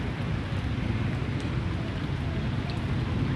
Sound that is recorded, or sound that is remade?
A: recorded